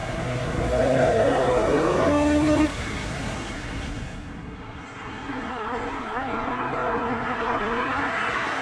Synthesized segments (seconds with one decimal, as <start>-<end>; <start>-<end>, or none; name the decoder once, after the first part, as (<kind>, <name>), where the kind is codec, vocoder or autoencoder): 0.0-8.6 (codec, SNAC)